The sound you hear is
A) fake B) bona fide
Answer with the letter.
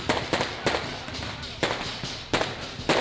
B